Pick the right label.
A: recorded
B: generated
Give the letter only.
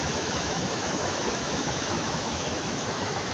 B